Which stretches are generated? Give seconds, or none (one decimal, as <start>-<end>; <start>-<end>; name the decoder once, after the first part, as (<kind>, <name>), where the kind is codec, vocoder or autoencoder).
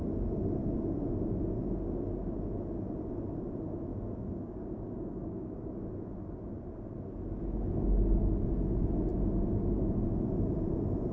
3.9-5.7 (codec, DAC)